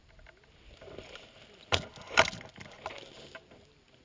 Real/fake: real